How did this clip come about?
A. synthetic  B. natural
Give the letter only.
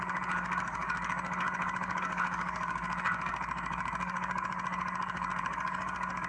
A